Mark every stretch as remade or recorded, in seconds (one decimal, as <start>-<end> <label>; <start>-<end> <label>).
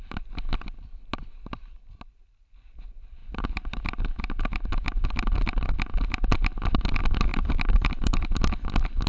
0.0-3.2 recorded; 3.2-3.8 remade; 3.8-7.3 recorded; 7.3-8.3 remade; 8.3-9.1 recorded